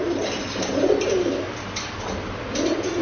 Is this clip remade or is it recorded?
recorded